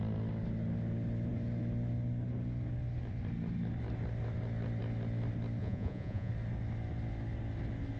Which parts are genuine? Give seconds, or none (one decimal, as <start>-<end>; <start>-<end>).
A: 0.0-5.6; 6.3-8.0